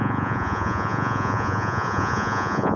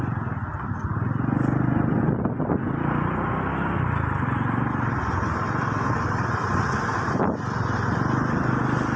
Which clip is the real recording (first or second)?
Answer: second